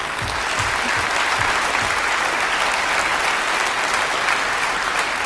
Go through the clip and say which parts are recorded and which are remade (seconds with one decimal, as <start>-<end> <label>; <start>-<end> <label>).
0.0-5.3 recorded